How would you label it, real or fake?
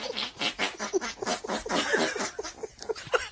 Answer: real